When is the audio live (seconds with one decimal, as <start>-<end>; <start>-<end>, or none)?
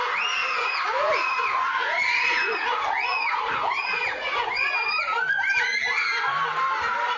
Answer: 0.0-0.4; 4.7-7.2